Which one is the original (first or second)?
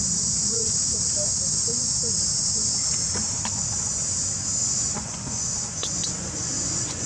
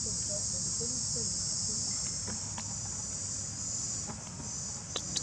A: second